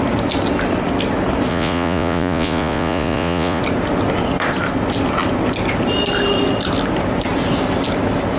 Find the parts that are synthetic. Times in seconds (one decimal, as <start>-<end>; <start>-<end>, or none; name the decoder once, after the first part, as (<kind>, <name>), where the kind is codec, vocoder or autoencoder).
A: 1.5-3.6 (vocoder, Vocos)